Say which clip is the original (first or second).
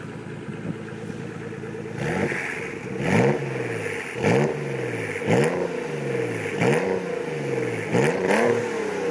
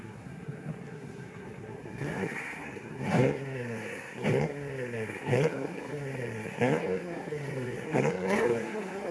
first